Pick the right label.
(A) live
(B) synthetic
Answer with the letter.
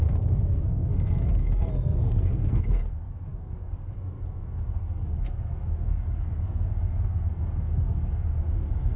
B